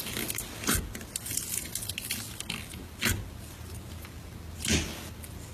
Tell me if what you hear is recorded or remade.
recorded